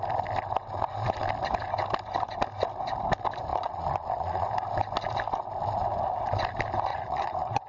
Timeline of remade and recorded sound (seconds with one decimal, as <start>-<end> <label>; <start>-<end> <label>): 0.0-3.5 recorded; 3.5-4.5 remade; 4.5-6.9 recorded; 6.9-7.7 remade